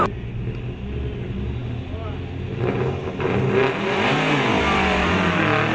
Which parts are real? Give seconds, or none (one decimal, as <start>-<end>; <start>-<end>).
0.0-5.7